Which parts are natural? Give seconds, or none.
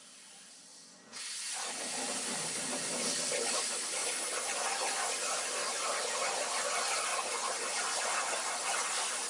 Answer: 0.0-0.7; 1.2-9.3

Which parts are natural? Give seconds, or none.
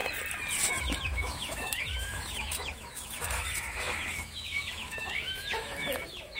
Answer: 0.0-0.8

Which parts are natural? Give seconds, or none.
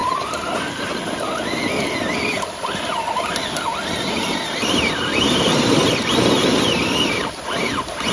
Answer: 1.5-3.8; 7.3-8.1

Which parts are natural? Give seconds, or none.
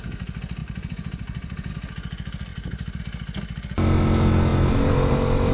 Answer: 0.0-0.6; 1.7-2.5; 3.0-5.5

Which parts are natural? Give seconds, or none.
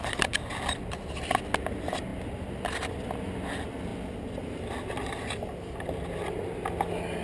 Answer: 0.0-7.2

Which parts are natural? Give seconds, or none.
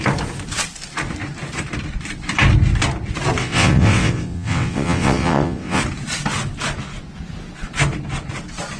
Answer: 0.0-3.4; 5.8-8.8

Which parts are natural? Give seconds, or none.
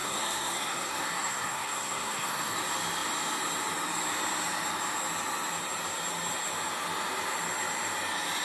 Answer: 2.6-8.4